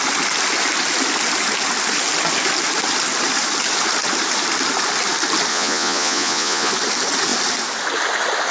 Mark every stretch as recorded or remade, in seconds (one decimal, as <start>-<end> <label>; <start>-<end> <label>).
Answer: 0.0-5.5 recorded; 5.5-6.7 remade; 6.7-8.5 recorded